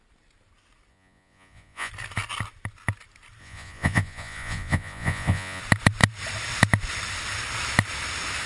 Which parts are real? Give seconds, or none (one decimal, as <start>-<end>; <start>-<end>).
0.0-0.9; 1.9-3.4; 5.6-8.5